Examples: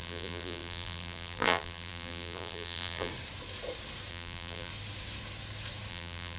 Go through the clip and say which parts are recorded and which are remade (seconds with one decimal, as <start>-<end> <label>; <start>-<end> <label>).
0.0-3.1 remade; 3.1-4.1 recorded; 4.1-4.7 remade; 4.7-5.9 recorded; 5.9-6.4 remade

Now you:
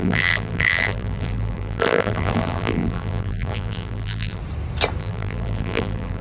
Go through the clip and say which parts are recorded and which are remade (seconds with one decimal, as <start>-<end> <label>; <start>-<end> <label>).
0.0-4.4 remade; 4.4-5.0 recorded; 5.0-6.2 remade

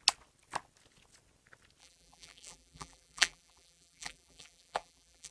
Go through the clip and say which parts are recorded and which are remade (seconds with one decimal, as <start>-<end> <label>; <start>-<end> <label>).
0.0-1.8 recorded; 1.8-5.3 remade